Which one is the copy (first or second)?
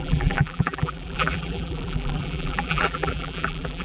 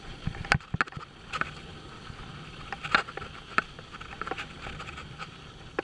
first